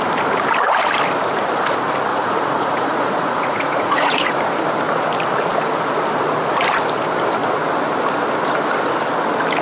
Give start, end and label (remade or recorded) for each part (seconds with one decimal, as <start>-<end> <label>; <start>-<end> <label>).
0.0-2.1 recorded; 2.1-4.4 remade; 4.4-9.6 recorded